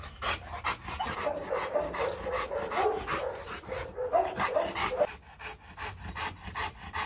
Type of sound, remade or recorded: recorded